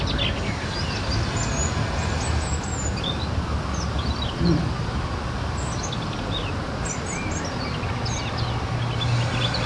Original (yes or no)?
yes